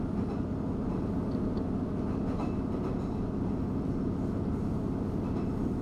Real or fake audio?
real